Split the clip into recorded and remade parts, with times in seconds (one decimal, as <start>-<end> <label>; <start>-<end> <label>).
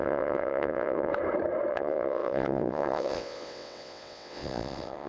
0.0-1.1 remade; 1.1-1.7 recorded; 1.7-5.1 remade